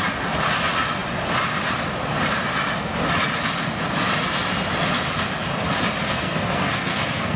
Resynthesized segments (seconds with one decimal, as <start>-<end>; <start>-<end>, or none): 6.0-7.4